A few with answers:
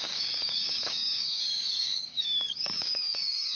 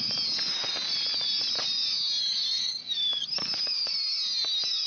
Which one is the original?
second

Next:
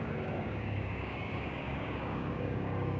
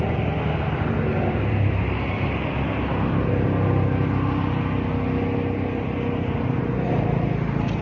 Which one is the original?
second